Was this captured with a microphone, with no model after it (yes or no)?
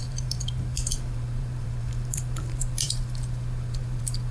no